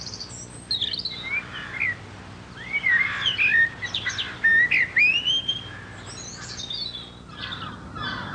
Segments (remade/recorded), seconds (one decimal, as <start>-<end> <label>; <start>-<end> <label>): 0.0-8.3 recorded